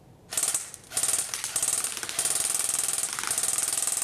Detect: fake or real real